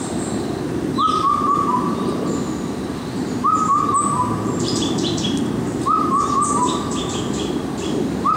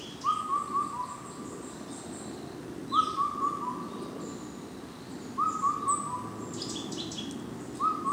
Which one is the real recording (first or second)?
second